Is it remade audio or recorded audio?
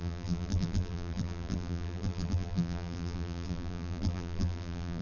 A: remade